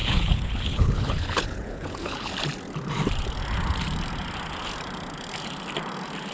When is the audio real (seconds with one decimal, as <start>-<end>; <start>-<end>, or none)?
2.3-6.3